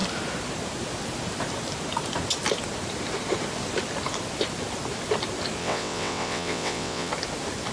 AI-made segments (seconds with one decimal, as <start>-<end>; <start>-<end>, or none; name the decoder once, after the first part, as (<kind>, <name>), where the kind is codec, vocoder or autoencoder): 5.6-7.1 (vocoder, WaveNeXt)